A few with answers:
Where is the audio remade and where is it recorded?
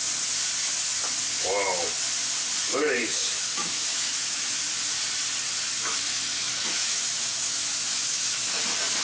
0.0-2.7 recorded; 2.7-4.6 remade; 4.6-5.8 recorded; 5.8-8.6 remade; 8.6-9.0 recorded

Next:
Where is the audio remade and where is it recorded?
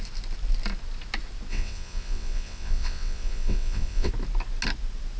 0.0-1.5 recorded; 1.5-4.1 remade; 4.1-5.2 recorded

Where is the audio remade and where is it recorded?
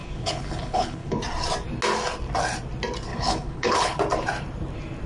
0.0-1.2 remade; 1.2-3.1 recorded; 3.1-4.0 remade; 4.0-5.1 recorded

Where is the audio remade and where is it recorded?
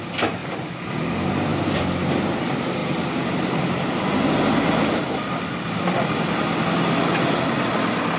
0.0-8.2 recorded